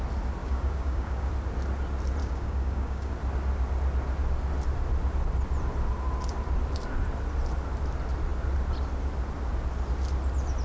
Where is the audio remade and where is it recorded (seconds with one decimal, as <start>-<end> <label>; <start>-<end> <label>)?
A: 0.0-0.4 recorded; 0.4-1.3 remade; 1.3-2.2 recorded; 2.2-3.1 remade; 3.1-10.6 recorded